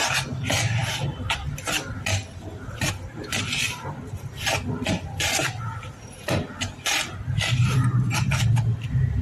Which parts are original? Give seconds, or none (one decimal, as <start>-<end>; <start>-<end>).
0.0-9.2